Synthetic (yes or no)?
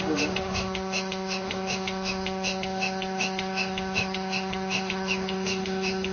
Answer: yes